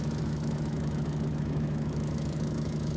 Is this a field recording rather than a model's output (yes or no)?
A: no